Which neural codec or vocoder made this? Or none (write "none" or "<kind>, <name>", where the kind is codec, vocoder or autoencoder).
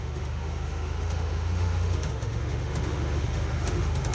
autoencoder, DAC-VAE